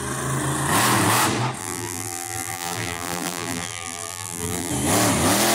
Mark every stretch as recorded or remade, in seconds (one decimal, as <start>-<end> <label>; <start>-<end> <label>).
0.0-1.6 recorded; 1.6-4.7 remade; 4.7-5.5 recorded